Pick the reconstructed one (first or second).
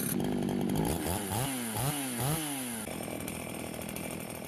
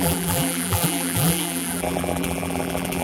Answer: second